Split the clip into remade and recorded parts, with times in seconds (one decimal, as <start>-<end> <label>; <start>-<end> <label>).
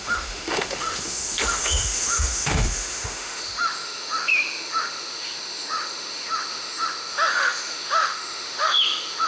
0.0-9.3 remade